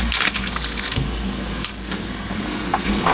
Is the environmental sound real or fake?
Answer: fake